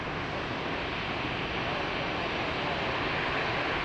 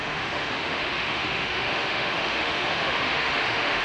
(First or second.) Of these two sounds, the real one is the first